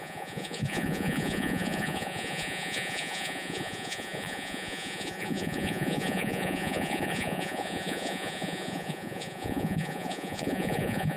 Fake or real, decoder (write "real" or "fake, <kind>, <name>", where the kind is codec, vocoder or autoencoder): fake, vocoder, Vocos